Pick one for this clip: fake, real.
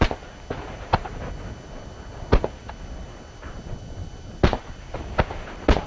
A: real